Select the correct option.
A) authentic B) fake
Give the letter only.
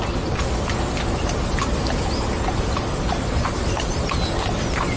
A